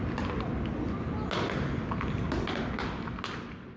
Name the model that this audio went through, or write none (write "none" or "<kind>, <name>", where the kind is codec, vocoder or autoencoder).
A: none